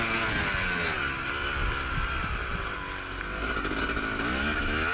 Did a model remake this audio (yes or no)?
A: no